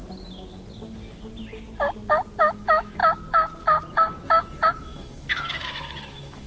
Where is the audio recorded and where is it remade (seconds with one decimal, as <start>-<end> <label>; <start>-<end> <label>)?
0.0-2.4 recorded; 2.4-3.0 remade; 3.0-3.9 recorded; 3.9-6.5 remade

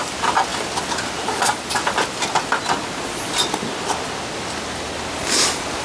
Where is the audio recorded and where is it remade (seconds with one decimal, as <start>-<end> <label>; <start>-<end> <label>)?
0.0-5.8 recorded

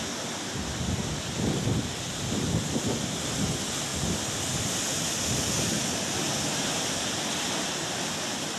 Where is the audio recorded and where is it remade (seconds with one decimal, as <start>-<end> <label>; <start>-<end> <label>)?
0.0-8.6 recorded

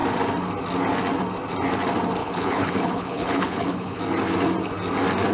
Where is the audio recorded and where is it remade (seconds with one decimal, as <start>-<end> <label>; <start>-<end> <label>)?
0.0-2.2 recorded; 2.2-4.0 remade; 4.0-5.3 recorded